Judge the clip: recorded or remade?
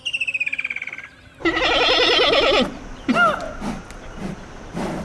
recorded